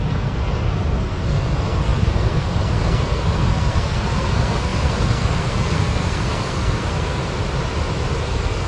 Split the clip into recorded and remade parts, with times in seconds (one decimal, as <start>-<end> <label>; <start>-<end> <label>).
0.0-7.2 remade; 7.2-8.2 recorded; 8.2-8.7 remade